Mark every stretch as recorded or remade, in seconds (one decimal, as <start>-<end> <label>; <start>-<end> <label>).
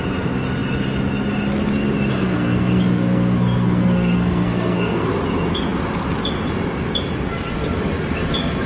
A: 0.0-2.1 recorded; 2.1-5.1 remade; 5.1-8.7 recorded